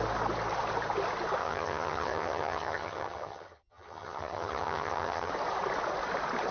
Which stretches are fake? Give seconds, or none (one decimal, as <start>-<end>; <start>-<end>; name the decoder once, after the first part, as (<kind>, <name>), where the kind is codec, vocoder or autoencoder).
1.4-5.3 (vocoder, HiFi-GAN)